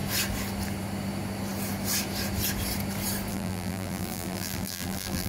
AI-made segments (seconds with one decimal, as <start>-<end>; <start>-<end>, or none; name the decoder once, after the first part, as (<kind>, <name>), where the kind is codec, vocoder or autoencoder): 3.3-5.3 (vocoder, BigVGAN v2)